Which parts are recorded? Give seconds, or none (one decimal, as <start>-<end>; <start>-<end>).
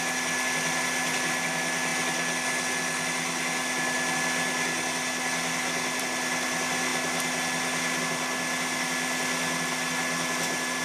0.0-10.8